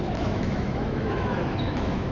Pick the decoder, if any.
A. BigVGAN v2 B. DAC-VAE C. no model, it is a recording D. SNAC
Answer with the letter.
B